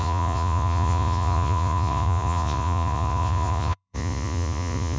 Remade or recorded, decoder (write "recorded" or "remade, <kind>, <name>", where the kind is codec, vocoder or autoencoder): remade, vocoder, Vocos